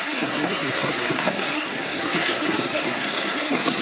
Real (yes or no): no